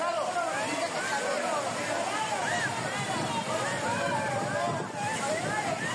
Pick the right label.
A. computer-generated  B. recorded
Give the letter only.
B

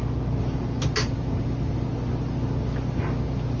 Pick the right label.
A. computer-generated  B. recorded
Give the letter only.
B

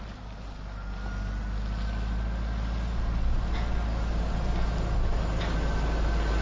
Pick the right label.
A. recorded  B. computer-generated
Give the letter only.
A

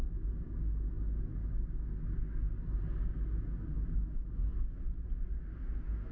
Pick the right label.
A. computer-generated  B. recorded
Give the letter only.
B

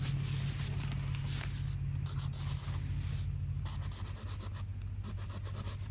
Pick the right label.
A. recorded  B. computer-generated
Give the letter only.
A